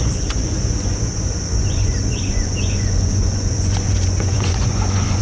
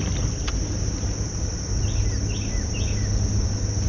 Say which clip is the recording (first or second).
second